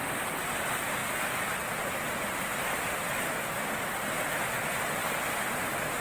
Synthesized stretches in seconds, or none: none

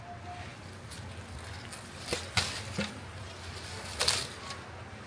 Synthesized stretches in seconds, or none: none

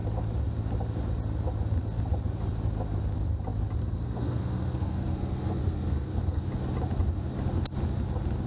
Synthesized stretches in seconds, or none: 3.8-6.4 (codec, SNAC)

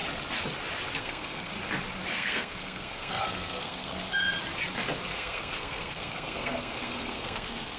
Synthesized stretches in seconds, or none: 1.0-1.5 (codec, SNAC); 2.1-3.9; 5.1-7.8

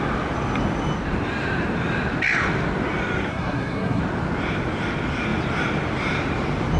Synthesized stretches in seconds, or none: 3.3-4.0 (codec, SNAC)